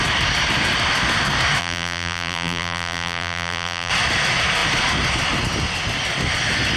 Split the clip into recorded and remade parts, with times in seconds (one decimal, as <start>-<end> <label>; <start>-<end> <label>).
0.0-1.6 recorded; 1.6-3.9 remade; 3.9-6.8 recorded